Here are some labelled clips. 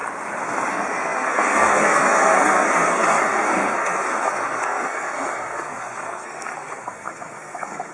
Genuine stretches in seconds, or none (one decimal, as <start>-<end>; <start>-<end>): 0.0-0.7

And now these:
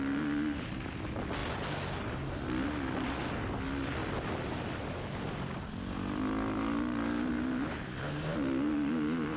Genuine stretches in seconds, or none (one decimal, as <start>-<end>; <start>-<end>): 0.0-9.4

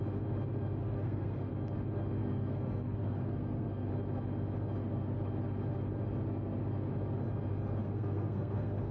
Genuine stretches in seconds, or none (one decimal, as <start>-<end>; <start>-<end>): 0.0-0.8; 1.5-2.2; 3.9-7.8

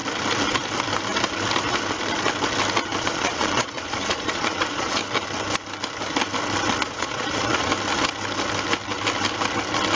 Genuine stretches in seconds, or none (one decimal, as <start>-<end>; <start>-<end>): 0.0-3.0; 5.0-6.8; 7.7-10.0